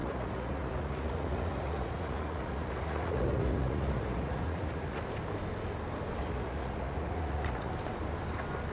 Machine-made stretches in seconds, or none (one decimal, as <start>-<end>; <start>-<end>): 0.0-5.0; 6.2-7.7

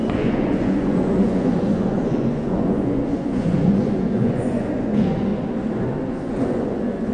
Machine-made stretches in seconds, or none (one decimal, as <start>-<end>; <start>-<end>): 0.0-5.3; 6.1-7.1

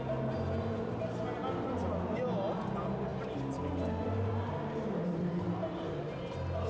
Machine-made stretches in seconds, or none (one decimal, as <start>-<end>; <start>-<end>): none

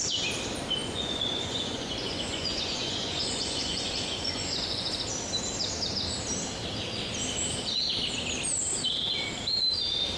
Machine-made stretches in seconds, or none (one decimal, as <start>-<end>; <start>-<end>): 0.8-5.0

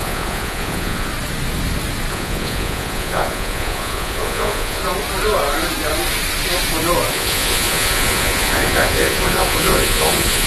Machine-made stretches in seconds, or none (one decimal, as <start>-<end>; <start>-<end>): 0.0-1.1; 2.1-4.8; 7.1-10.5

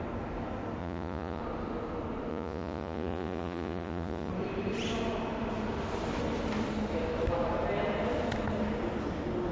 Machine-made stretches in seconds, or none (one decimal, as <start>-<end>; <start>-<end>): 0.8-1.4; 2.3-4.3

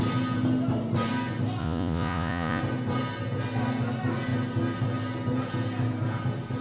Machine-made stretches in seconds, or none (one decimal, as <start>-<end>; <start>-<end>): 1.6-2.6